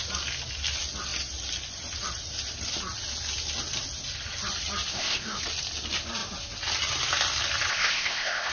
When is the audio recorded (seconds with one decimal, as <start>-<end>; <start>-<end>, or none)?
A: 0.0-4.9; 5.4-7.7